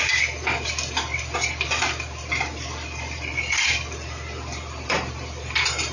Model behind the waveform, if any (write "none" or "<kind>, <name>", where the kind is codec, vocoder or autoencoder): none